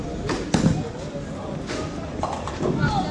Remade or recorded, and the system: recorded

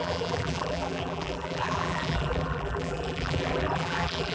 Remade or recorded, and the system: remade, vocoder, BigVGAN v2